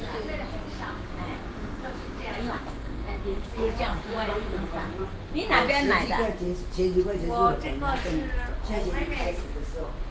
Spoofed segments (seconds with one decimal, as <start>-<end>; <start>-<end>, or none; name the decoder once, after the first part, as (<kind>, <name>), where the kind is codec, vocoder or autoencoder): 0.7-5.0 (codec, DAC)